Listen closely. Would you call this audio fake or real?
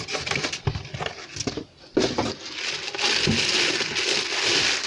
real